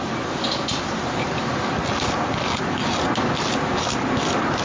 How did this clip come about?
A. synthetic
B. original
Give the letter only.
B